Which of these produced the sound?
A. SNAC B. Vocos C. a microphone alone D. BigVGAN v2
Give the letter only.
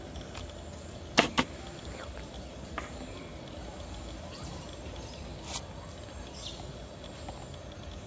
C